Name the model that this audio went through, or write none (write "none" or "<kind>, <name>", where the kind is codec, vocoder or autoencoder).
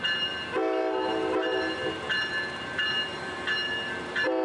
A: none